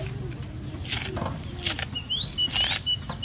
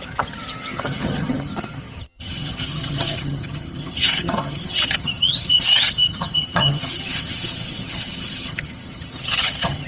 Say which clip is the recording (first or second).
first